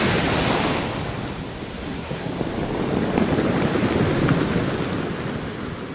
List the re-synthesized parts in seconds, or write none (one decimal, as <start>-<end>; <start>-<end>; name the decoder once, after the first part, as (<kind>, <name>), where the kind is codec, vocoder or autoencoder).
1.7-2.3 (codec, SNAC)